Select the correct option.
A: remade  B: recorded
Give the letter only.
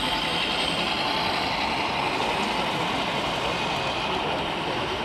B